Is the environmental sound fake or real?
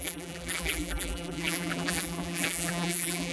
fake